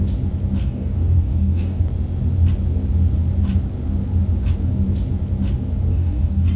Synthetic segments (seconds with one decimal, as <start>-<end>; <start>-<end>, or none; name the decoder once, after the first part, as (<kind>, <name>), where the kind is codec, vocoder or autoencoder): 0.6-1.8 (codec, DAC); 5.9-6.6